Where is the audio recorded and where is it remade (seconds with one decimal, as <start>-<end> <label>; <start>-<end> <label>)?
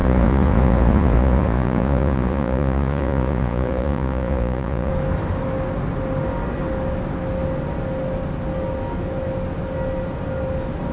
0.0-4.9 remade; 4.9-10.9 recorded